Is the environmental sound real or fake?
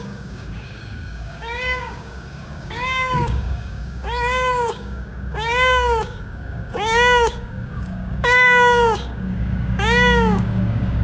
fake